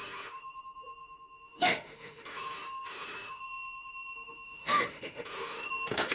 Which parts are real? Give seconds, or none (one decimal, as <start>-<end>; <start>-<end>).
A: none